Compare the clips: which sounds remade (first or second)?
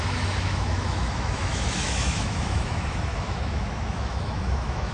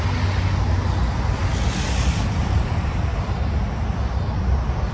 first